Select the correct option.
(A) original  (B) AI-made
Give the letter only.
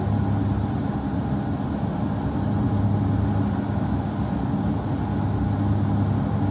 A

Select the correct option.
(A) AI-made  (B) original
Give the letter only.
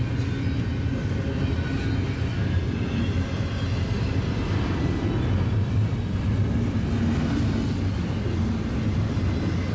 B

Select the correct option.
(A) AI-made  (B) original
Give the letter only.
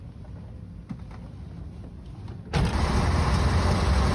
B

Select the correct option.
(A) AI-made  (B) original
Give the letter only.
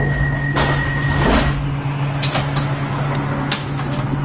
B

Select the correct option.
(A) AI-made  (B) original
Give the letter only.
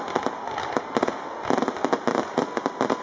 B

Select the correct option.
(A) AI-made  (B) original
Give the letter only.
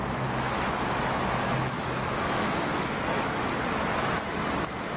A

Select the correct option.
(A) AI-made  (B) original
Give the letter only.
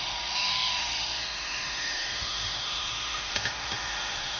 A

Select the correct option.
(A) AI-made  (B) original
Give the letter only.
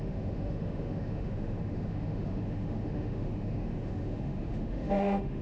A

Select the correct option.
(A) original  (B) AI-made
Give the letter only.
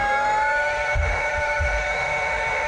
B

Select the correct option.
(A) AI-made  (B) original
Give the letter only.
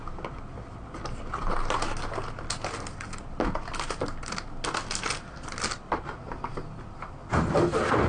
B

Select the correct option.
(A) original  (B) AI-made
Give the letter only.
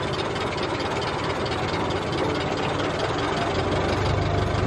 A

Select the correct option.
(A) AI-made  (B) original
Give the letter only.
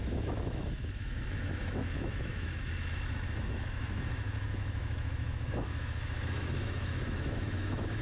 A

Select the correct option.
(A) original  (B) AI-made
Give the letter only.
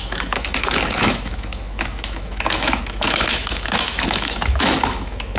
B